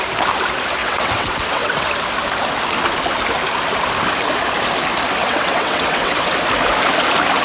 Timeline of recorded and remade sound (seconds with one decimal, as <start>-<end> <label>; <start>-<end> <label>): 0.0-0.8 recorded; 0.8-1.9 remade; 1.9-5.2 recorded; 5.2-6.3 remade; 6.3-7.4 recorded